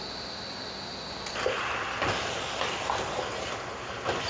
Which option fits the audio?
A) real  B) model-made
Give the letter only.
A